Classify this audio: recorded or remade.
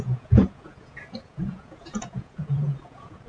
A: remade